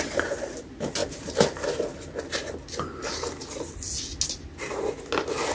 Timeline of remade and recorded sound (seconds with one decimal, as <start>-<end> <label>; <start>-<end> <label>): 0.0-5.5 recorded